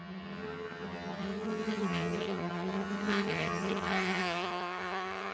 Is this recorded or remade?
remade